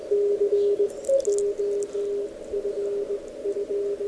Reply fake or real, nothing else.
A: real